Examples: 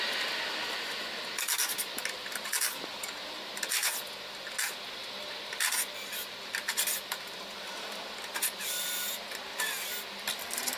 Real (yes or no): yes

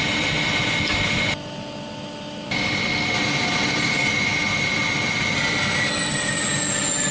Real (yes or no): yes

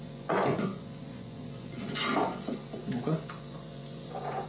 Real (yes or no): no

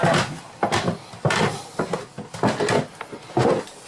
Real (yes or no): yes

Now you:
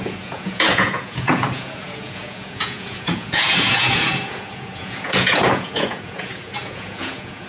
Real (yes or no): no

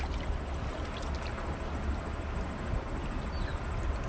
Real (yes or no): yes